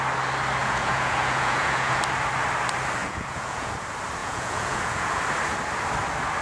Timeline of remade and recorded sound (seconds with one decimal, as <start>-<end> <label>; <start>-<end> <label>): 0.0-0.6 recorded; 0.6-2.0 remade; 2.0-3.0 recorded; 3.0-3.7 remade; 3.7-4.2 recorded; 4.2-5.2 remade; 5.2-6.4 recorded